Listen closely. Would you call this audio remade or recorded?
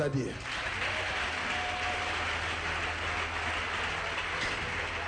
recorded